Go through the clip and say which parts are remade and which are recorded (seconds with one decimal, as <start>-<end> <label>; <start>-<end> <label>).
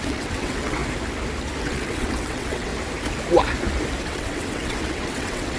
0.0-0.8 remade; 0.8-1.6 recorded; 1.6-2.7 remade; 2.7-4.0 recorded; 4.0-5.6 remade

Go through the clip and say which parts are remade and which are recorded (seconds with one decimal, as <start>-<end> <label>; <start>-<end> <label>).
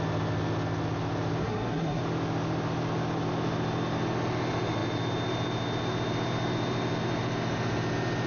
0.0-1.4 recorded; 1.4-2.0 remade; 2.0-8.3 recorded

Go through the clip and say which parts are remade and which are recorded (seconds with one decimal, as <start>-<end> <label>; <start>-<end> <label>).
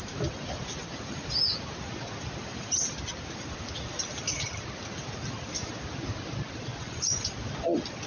0.0-6.7 recorded; 6.7-7.3 remade; 7.3-8.1 recorded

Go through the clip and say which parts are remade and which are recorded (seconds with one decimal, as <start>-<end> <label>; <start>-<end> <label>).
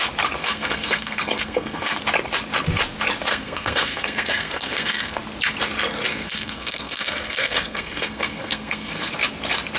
0.0-0.4 recorded; 0.4-2.0 remade; 2.0-3.3 recorded; 3.3-5.2 remade; 5.2-6.1 recorded; 6.1-9.1 remade; 9.1-9.8 recorded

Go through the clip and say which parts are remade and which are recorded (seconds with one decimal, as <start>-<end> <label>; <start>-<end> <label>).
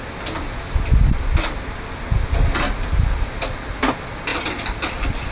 0.0-4.3 recorded; 4.3-5.3 remade